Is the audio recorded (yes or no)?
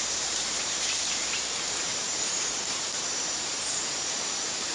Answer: no